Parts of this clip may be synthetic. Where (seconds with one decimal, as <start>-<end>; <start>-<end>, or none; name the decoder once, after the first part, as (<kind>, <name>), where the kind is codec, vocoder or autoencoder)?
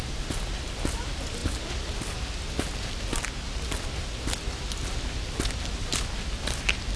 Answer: none